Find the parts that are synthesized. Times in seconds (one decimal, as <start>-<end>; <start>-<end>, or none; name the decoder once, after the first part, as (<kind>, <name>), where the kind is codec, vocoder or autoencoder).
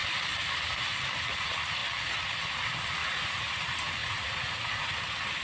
3.0-3.6 (vocoder, Vocos); 4.0-5.0